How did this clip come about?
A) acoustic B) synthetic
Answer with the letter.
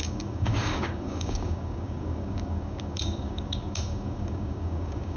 B